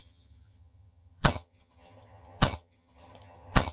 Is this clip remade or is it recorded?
remade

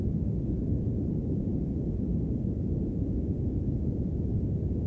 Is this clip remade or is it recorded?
recorded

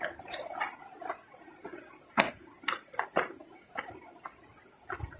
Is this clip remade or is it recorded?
recorded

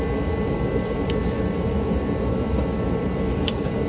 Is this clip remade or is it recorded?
recorded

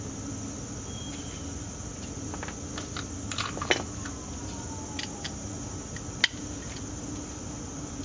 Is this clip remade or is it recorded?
recorded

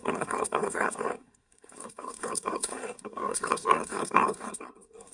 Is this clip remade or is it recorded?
remade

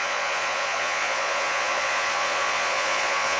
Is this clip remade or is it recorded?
remade